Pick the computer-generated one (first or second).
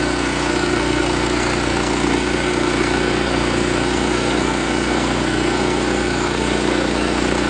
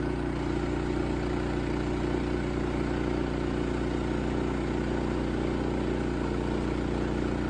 first